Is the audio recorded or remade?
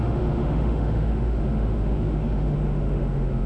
remade